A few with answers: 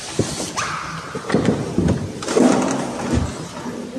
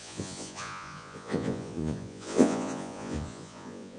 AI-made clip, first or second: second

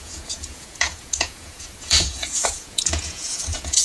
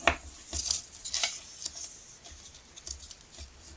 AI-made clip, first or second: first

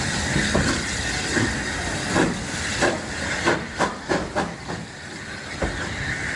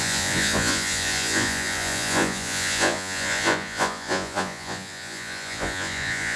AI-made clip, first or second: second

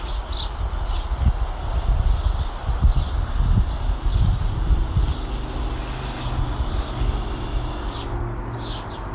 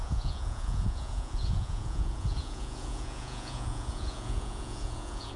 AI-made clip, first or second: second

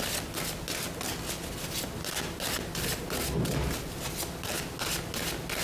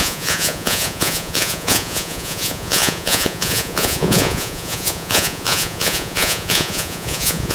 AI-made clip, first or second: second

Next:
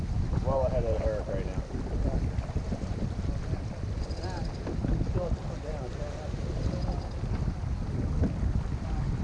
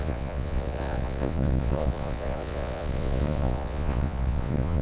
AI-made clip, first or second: second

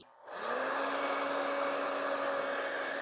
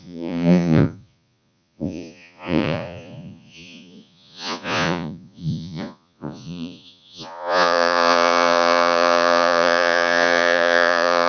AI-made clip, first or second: second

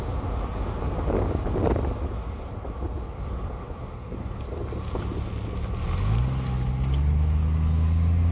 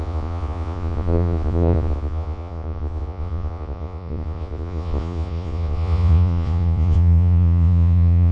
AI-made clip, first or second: second